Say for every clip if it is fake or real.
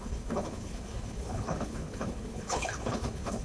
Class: fake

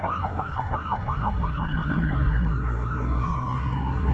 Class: fake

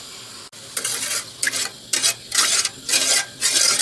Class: real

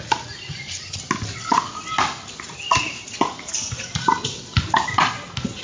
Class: real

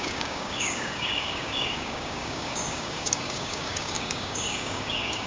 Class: fake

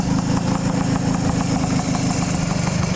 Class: real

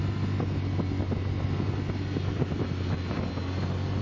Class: real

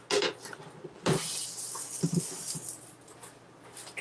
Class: real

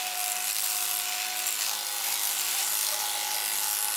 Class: real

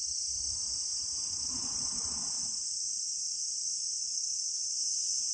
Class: real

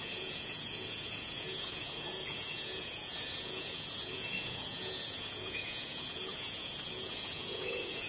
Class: fake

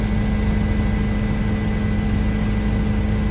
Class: real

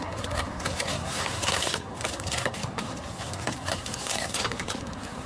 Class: fake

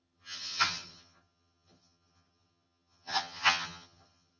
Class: fake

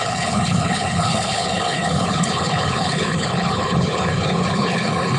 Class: fake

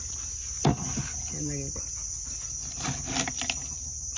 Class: real